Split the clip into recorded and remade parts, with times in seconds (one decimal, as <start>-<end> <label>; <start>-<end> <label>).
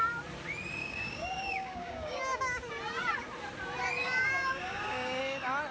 0.0-0.8 recorded; 0.8-2.7 remade; 2.7-4.0 recorded; 4.0-5.2 remade; 5.2-5.7 recorded